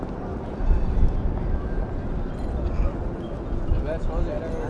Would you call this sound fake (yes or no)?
no